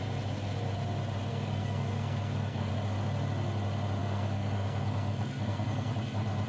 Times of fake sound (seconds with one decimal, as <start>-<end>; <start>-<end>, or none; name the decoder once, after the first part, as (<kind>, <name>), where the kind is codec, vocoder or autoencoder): 1.3-2.7 (codec, SNAC); 4.0-5.9